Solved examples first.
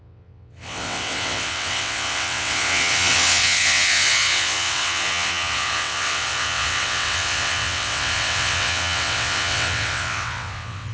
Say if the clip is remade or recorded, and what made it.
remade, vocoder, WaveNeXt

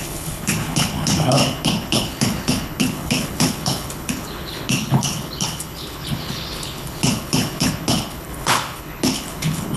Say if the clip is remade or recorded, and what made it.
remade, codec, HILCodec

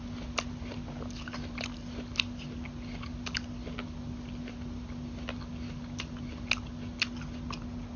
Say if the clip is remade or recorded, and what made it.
recorded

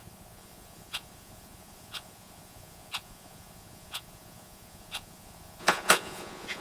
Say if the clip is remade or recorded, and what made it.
remade, vocoder, Vocos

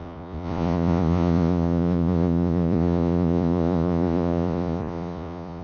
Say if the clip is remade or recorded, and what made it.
remade, vocoder, Vocos